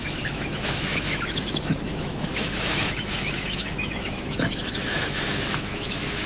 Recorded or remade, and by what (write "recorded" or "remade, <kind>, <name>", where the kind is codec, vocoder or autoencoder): remade, autoencoder, DAC-VAE